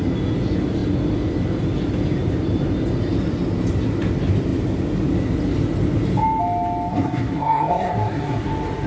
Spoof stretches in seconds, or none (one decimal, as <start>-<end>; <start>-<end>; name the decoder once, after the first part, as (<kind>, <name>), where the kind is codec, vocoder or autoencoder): 6.9-8.5 (codec, SNAC)